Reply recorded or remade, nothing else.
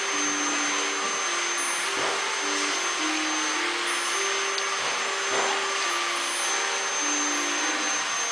recorded